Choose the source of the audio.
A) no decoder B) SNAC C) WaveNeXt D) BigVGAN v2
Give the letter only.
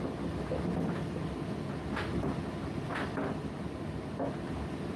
A